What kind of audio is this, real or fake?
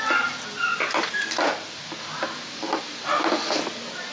real